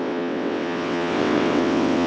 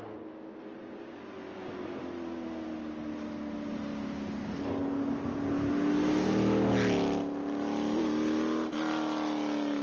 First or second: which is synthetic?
first